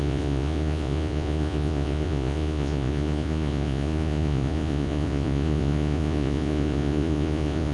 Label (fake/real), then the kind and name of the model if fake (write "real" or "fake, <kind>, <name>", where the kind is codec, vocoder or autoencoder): fake, vocoder, Vocos